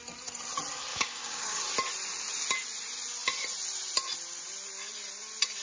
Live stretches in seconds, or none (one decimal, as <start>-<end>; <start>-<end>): 0.0-0.9; 1.6-5.6